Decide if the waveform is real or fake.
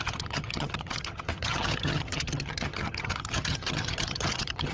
fake